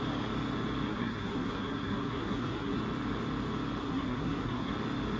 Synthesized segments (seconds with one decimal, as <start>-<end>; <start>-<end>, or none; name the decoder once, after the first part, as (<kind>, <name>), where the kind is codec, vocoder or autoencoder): 0.9-2.8 (codec, SNAC); 3.8-4.7